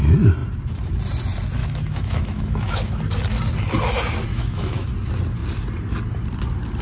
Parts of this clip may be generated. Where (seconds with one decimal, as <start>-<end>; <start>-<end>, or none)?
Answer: 1.6-3.0; 4.3-4.9

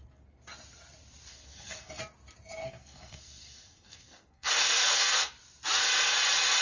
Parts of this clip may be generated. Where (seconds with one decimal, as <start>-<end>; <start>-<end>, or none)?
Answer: 1.3-2.0; 2.6-5.3

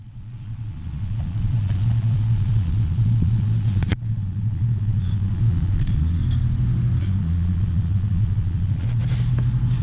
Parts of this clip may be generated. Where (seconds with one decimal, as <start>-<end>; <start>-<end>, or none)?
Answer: 0.0-6.2; 7.0-9.0

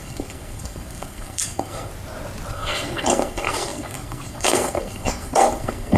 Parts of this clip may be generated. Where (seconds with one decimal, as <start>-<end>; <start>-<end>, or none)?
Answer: 0.0-1.9; 2.5-6.0